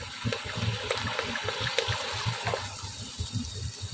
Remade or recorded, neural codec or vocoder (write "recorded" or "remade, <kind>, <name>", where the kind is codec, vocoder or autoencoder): recorded